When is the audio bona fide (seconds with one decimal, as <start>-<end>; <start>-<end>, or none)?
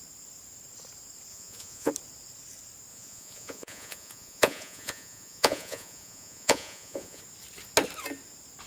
0.0-1.3; 1.9-2.9; 7.2-8.7